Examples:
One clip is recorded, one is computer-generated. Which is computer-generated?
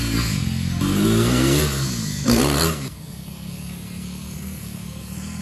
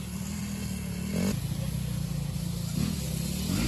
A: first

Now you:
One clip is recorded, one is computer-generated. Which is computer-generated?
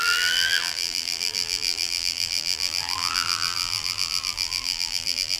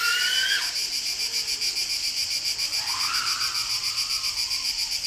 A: first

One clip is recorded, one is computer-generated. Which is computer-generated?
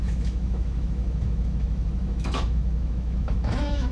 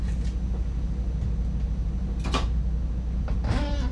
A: first